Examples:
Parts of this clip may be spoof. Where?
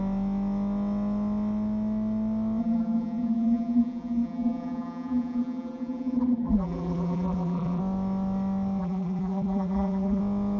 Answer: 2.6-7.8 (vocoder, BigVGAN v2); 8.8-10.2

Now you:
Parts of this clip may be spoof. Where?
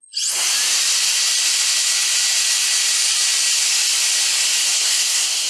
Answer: 4.6-5.5 (codec, SNAC)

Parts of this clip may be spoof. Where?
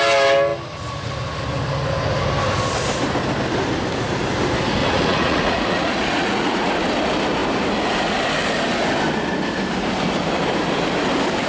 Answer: 4.8-6.7 (vocoder, Vocos)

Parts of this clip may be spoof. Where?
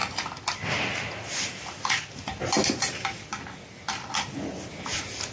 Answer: none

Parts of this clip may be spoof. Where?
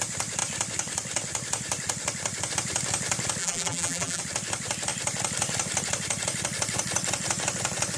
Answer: 3.4-4.2 (vocoder, BigVGAN v2)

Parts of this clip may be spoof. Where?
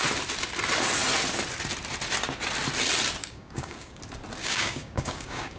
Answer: 3.2-4.0 (codec, DAC); 4.4-5.6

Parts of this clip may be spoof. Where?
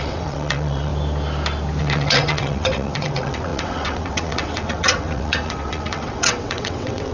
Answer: 0.0-0.9 (vocoder, WaveNeXt); 1.8-7.1